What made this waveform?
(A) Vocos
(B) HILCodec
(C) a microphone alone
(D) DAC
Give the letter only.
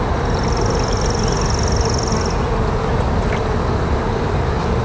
C